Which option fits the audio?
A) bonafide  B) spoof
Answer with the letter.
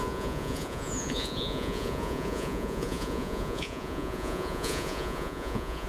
B